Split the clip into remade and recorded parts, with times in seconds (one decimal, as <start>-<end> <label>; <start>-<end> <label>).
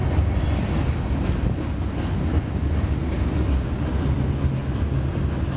0.0-5.6 recorded